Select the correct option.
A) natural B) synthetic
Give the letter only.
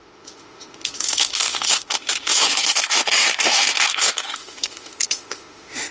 B